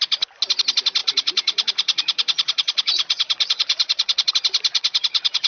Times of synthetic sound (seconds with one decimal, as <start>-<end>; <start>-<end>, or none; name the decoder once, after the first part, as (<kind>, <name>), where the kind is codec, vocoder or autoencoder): 1.0-4.3 (vocoder, Vocos); 4.7-5.5

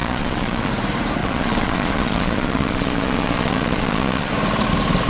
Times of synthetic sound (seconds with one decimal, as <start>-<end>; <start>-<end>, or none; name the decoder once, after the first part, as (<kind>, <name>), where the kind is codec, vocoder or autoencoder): 0.0-0.7 (vocoder, Vocos); 1.2-4.3

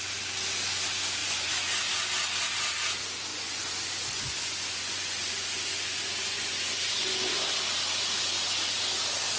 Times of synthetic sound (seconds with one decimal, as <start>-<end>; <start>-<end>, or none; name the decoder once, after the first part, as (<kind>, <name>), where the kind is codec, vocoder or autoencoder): 1.2-1.9 (vocoder, Vocos); 3.3-7.5

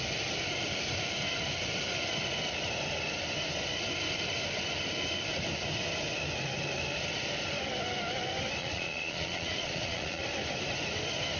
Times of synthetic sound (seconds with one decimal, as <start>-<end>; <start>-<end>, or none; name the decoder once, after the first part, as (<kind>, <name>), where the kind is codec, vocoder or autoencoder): 8.6-10.2 (vocoder, Vocos)